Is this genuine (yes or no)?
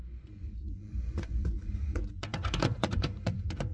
no